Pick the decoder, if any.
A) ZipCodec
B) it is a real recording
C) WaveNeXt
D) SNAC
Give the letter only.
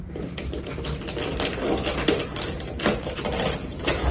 B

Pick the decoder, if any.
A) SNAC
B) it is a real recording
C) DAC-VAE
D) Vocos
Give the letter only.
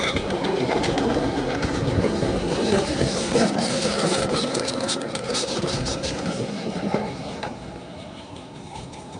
A